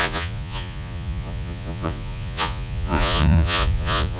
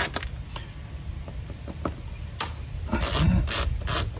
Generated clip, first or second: first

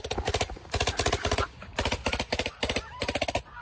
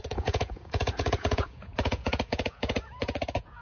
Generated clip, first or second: second